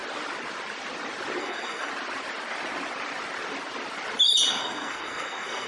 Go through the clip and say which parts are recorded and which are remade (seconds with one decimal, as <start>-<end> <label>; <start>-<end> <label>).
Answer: 0.0-1.4 recorded; 1.4-1.9 remade; 1.9-4.5 recorded; 4.5-5.7 remade